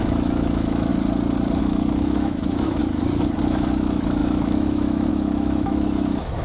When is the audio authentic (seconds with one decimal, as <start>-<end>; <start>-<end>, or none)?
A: 0.9-1.6; 2.8-3.4